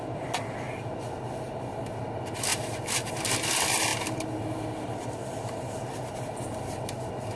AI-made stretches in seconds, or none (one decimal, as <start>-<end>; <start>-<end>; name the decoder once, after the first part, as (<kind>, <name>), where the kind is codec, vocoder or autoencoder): 2.5-3.1 (vocoder, BigVGAN v2)

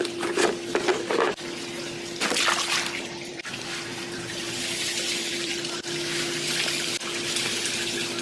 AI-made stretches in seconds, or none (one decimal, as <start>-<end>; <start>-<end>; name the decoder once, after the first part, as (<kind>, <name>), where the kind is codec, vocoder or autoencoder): 0.9-1.4 (vocoder, BigVGAN v2); 3.3-4.5; 5.2-5.8

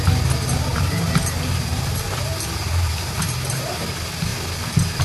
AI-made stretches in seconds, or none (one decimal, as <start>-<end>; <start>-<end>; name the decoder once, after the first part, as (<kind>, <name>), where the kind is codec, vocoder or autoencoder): 0.7-3.7 (vocoder, BigVGAN v2)

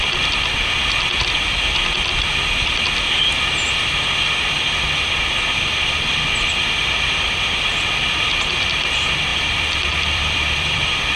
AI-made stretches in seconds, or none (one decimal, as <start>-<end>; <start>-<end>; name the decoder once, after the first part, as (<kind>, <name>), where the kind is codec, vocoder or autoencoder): 9.3-11.2 (vocoder, BigVGAN v2)

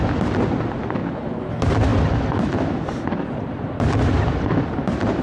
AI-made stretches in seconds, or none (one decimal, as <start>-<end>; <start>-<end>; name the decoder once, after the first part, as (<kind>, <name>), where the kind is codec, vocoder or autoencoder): 1.0-1.5 (vocoder, BigVGAN v2); 1.9-5.2